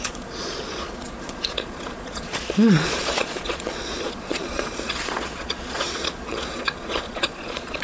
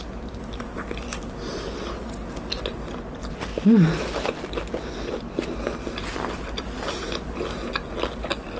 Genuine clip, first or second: second